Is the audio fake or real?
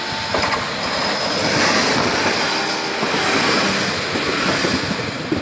real